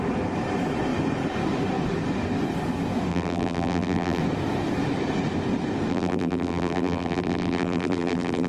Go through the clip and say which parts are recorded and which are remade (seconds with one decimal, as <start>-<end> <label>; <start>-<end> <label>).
0.0-3.1 recorded; 3.1-4.2 remade; 4.2-5.9 recorded; 5.9-8.5 remade